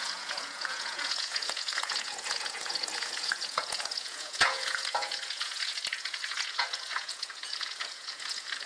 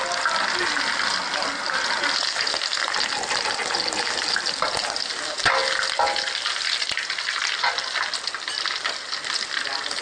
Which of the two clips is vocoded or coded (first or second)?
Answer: first